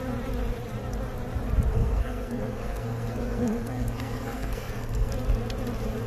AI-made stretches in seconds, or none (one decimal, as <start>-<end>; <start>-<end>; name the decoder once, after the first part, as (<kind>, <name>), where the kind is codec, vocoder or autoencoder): 1.7-5.1 (codec, SNAC)